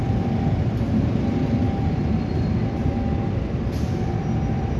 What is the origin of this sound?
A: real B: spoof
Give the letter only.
A